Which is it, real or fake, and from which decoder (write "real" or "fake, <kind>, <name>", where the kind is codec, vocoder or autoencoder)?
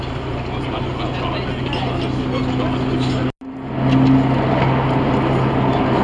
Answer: real